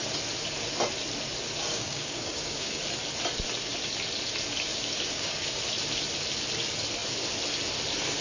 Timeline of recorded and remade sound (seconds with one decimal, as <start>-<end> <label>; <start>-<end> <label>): 0.0-1.7 recorded; 1.7-2.8 remade; 2.8-4.7 recorded; 4.7-5.6 remade; 5.6-8.2 recorded